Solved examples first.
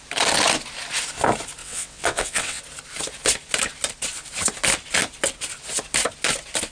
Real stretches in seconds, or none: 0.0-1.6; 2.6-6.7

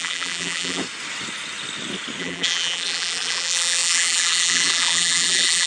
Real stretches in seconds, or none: 0.8-2.2

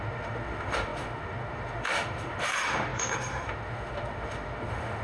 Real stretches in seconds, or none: none

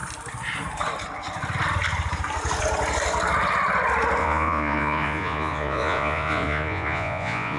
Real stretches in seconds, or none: 0.0-4.2

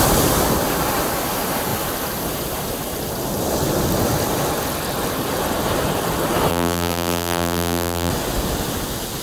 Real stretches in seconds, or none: 0.0-6.5; 8.1-9.2

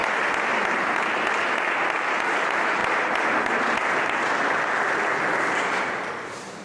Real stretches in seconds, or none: 0.0-2.3; 2.8-4.9

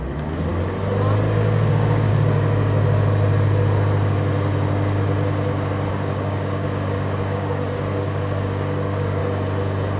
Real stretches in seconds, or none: 0.5-1.7; 2.1-5.9; 9.2-10.0

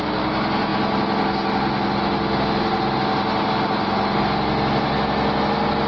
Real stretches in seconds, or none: 0.0-5.9